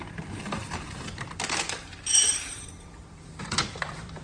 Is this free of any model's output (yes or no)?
no